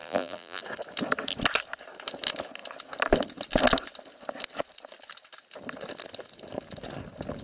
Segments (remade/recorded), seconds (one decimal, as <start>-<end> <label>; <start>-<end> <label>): 0.0-0.6 remade; 0.6-7.4 recorded